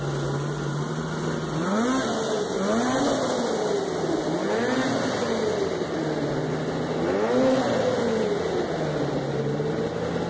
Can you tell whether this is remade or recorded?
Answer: recorded